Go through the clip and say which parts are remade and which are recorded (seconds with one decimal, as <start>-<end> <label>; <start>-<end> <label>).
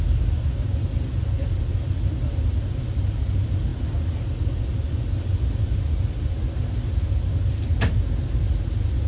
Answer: 0.0-9.1 recorded